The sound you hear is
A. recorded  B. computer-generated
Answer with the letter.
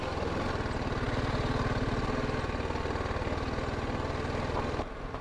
A